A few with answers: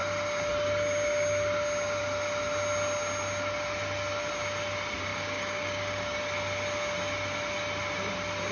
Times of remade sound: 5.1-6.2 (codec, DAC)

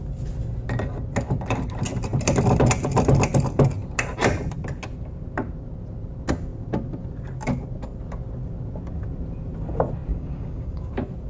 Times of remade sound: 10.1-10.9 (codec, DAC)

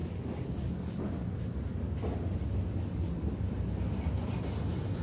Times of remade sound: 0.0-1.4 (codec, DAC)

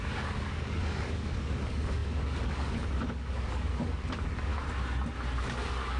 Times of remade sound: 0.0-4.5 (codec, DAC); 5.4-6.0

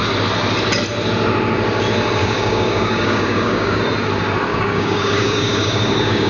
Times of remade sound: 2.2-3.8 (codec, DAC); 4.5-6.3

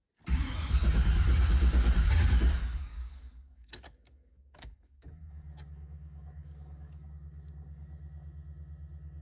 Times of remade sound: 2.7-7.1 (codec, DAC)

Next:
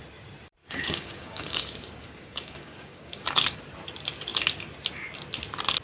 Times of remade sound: 0.6-3.6 (codec, DAC)

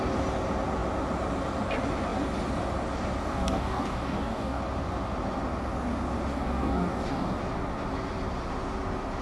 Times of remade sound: 3.2-4.6 (codec, DAC); 6.3-7.4